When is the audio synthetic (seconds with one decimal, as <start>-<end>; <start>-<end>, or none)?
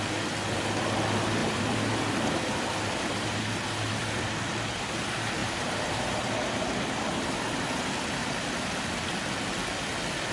1.4-3.4; 5.4-6.3